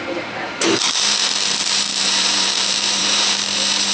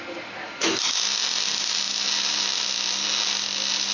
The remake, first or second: first